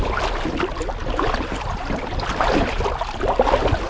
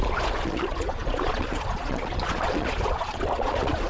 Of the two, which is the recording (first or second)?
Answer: first